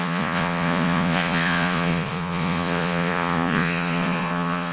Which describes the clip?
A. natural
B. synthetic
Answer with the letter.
B